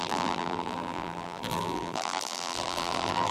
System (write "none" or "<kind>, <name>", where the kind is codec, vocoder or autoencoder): vocoder, BigVGAN v2